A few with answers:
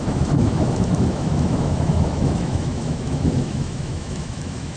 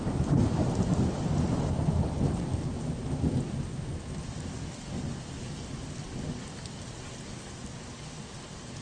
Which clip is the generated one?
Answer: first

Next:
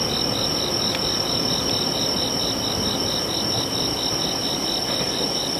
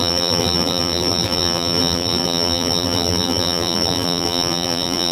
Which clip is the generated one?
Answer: second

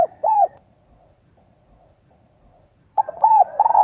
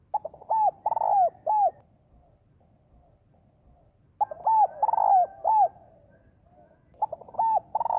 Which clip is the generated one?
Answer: first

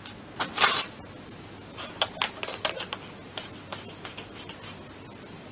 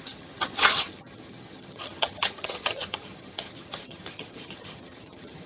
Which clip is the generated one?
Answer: second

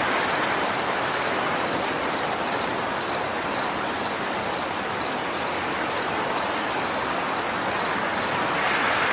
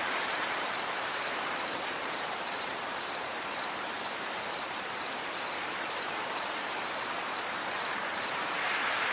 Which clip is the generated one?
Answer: second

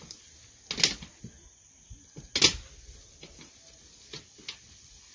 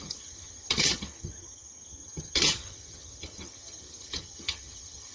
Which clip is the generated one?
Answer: second